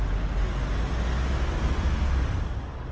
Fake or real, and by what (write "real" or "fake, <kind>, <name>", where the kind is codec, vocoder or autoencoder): real